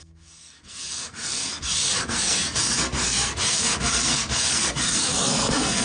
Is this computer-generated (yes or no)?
yes